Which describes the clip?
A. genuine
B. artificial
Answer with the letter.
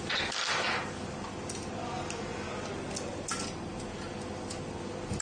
A